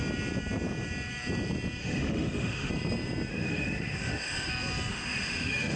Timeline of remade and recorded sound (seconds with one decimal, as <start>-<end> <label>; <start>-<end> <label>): 0.0-1.8 recorded; 1.8-2.7 remade; 2.7-3.3 recorded; 3.3-4.5 remade; 4.5-4.9 recorded; 4.9-5.8 remade